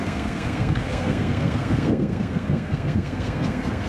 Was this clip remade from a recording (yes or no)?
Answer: yes